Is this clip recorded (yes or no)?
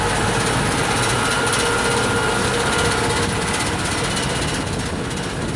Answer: yes